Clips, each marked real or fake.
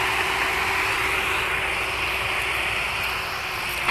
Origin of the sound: real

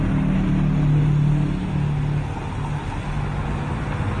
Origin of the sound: real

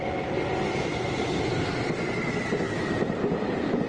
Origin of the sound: real